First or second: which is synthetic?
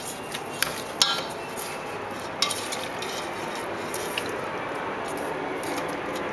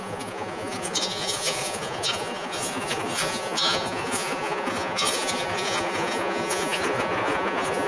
second